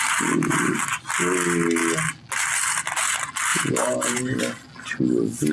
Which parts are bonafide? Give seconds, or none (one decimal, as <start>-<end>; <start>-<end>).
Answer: 0.0-3.5; 4.4-5.5